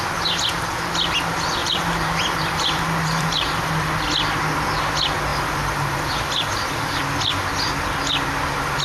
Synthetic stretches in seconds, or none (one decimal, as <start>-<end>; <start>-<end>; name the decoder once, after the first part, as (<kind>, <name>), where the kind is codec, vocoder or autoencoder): 1.6-3.9 (vocoder, BigVGAN v2); 5.3-7.0